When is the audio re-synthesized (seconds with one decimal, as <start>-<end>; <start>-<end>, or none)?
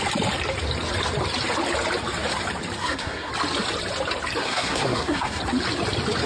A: 2.8-3.3; 4.4-5.4